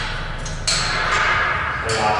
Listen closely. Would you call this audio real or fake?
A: real